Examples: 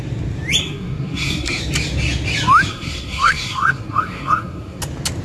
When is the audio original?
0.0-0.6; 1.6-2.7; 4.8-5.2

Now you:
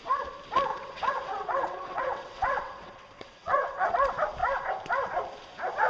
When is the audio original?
0.0-0.7; 3.9-5.9